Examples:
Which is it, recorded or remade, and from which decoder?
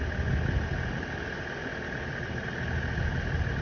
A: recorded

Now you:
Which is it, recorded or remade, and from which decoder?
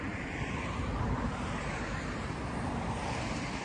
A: remade, vocoder, BigVGAN v2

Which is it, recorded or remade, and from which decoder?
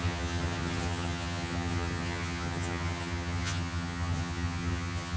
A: remade, vocoder, HiFi-GAN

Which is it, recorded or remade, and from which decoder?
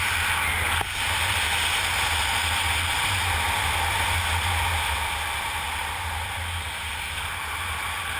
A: recorded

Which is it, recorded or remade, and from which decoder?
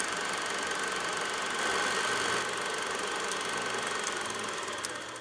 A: recorded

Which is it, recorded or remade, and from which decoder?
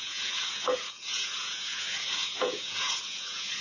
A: remade, vocoder, Vocos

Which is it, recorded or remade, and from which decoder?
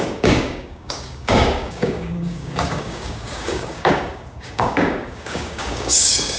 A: remade, codec, DAC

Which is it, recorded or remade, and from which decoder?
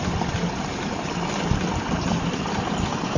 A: recorded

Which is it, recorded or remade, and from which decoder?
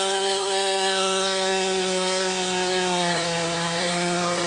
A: remade, codec, SNAC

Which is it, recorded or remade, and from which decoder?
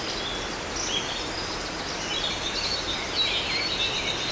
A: recorded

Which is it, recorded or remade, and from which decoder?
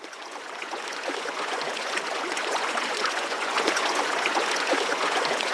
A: remade, vocoder, Vocos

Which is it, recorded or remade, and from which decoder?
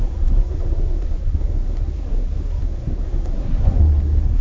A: remade, codec, SNAC